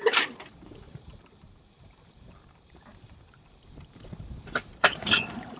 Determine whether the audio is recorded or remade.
remade